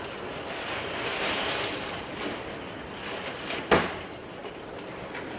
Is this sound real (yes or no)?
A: yes